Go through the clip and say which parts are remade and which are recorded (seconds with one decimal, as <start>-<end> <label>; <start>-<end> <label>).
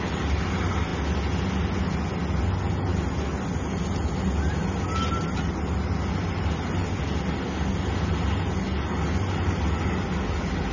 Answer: 0.0-10.7 recorded